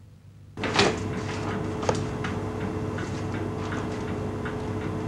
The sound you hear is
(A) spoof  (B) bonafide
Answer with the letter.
B